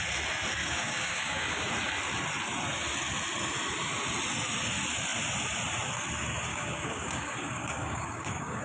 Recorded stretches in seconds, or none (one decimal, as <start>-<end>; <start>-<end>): 0.0-0.6; 1.7-6.5